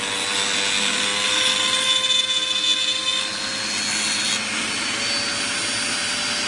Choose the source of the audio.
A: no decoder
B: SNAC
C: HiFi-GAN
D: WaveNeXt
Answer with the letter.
A